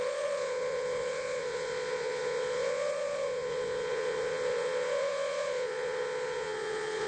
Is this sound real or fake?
fake